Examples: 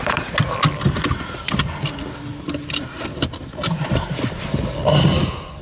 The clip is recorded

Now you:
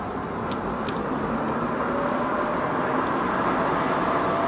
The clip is recorded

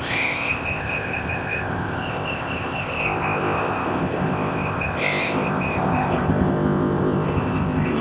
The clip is remade